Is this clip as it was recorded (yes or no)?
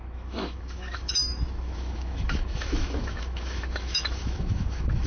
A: no